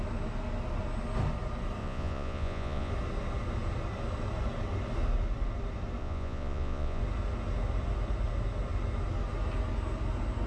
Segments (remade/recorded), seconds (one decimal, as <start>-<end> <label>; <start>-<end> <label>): 0.0-1.8 recorded; 1.8-2.9 remade; 2.9-6.0 recorded; 6.0-7.0 remade; 7.0-10.5 recorded